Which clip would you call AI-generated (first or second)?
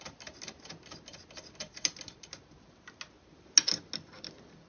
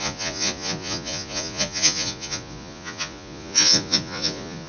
second